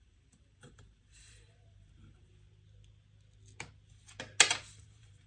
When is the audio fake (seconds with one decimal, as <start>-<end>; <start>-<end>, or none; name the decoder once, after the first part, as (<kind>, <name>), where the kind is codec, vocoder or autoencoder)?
0.0-2.3 (vocoder, BigVGAN v2); 4.5-5.3